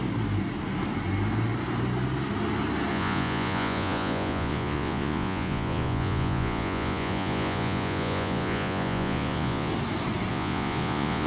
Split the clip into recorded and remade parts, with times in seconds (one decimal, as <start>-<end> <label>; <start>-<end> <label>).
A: 0.0-2.9 recorded; 2.9-9.7 remade; 9.7-10.3 recorded; 10.3-11.3 remade